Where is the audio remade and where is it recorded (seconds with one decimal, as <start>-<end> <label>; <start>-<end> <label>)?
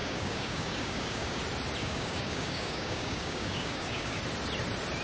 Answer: 0.0-1.4 remade; 1.4-1.8 recorded; 1.8-4.2 remade; 4.2-5.0 recorded